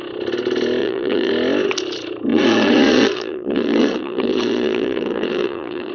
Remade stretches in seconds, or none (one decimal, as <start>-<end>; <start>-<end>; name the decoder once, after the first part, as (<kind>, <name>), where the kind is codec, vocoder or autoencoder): 0.8-1.3 (vocoder, Vocos); 2.3-5.9